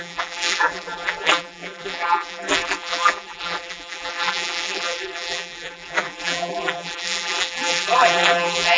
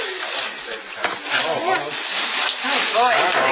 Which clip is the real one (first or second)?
second